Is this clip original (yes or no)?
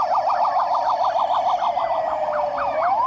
yes